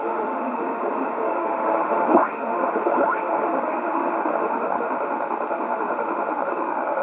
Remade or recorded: remade